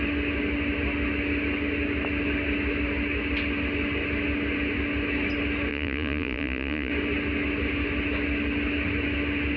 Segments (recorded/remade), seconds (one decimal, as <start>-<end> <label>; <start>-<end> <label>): 0.0-5.7 recorded; 5.7-6.9 remade; 6.9-9.6 recorded